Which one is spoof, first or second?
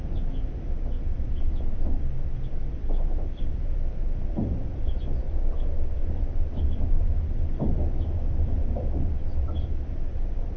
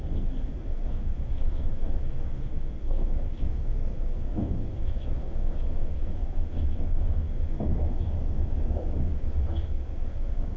second